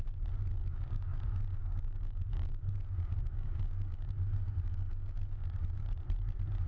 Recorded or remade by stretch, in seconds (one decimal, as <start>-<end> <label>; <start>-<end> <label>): 0.0-0.6 recorded; 0.6-1.2 remade; 1.2-1.6 recorded; 1.6-5.6 remade; 5.6-6.7 recorded